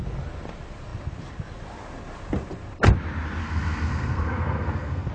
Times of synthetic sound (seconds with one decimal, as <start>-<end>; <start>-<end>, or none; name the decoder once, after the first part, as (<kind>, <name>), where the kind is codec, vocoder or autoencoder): 3.4-5.1 (codec, SNAC)